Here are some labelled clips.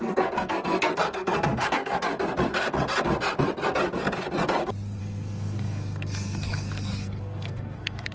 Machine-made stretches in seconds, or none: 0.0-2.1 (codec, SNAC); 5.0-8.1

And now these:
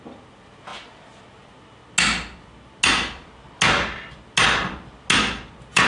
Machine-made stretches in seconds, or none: none

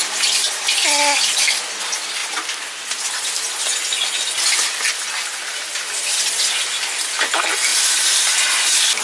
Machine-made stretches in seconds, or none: none

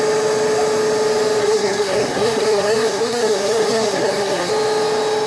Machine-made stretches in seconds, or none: 1.4-4.5 (codec, SNAC)

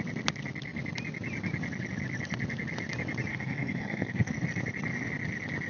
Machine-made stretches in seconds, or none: 3.3-4.3 (codec, SNAC)

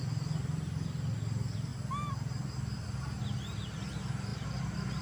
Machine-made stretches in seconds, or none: none

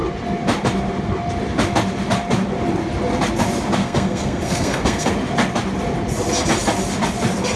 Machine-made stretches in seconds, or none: 3.8-5.1 (codec, SNAC)

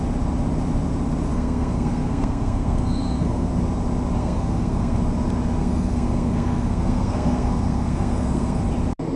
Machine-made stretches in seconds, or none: 1.3-3.5 (codec, SNAC); 4.2-5.0; 5.6-8.6